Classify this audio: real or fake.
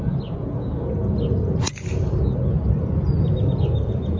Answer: real